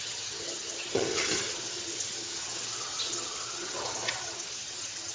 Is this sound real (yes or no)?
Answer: no